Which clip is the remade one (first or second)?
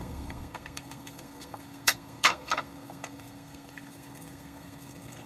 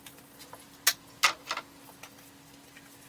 first